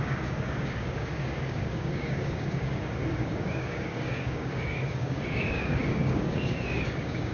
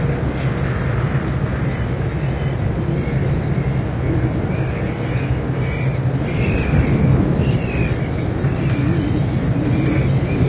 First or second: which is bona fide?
second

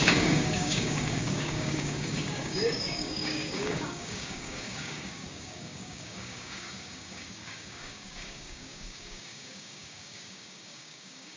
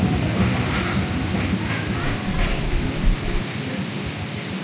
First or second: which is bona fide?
second